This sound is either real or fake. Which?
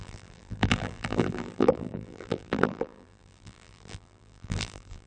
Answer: fake